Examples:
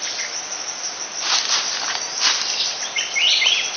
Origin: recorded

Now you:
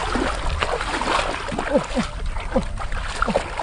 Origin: recorded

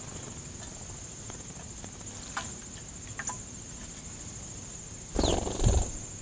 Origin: recorded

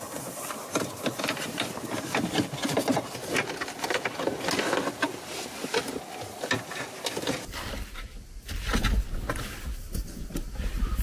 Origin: recorded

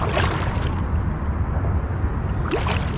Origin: recorded